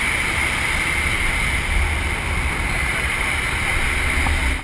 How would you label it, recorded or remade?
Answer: recorded